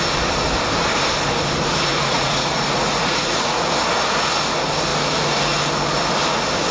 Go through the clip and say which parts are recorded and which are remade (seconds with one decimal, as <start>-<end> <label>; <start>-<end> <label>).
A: 0.0-1.9 recorded; 1.9-3.6 remade; 3.6-6.7 recorded